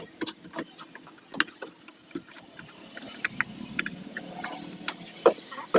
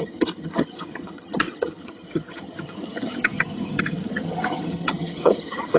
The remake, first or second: second